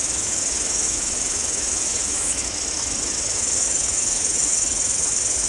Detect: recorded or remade remade